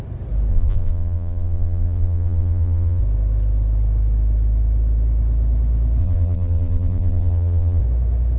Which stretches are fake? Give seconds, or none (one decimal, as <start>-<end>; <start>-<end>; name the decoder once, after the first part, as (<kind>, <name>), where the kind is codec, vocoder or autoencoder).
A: 0.5-3.0 (vocoder, BigVGAN v2); 6.0-7.8